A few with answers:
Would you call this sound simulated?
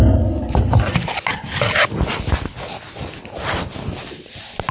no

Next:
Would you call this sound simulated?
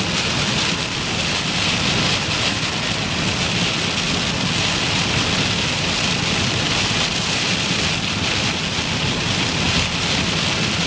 no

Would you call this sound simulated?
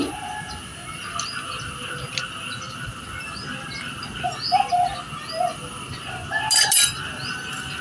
no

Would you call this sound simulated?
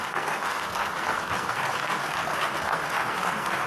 yes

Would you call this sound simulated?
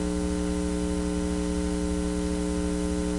no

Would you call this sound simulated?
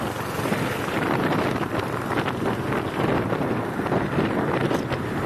no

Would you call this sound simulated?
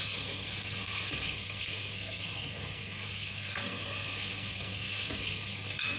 yes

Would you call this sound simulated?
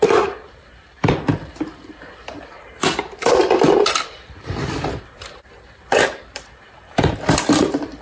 yes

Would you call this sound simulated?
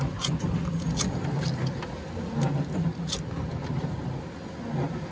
no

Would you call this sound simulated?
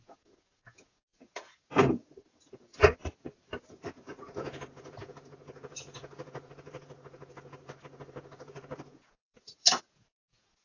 yes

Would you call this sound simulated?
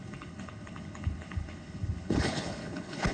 yes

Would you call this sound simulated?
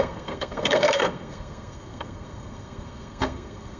yes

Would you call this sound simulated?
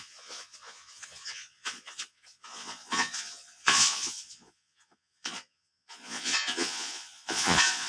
yes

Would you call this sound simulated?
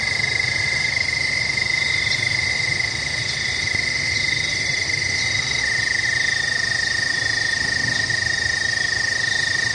no